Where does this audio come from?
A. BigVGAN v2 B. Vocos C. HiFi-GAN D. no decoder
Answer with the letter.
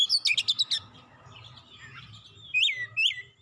D